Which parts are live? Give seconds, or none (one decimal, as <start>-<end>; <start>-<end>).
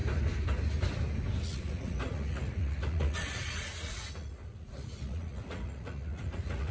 0.0-1.4